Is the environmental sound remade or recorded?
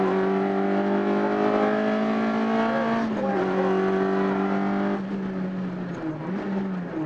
recorded